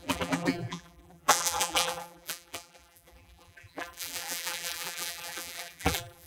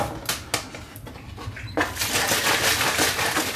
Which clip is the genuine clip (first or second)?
second